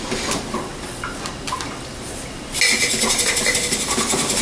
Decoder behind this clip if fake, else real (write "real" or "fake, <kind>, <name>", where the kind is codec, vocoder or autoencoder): real